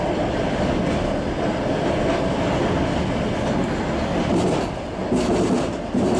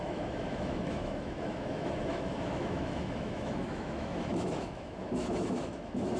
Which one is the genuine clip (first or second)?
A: first